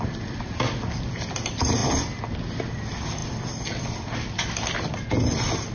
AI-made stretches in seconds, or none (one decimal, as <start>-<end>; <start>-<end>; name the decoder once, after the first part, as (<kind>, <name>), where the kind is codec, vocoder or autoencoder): none